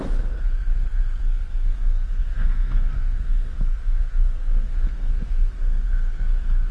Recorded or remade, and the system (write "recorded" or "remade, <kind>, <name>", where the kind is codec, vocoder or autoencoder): remade, codec, SNAC